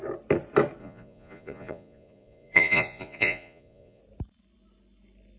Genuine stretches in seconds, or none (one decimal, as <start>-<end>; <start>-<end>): 0.0-0.8; 4.0-5.4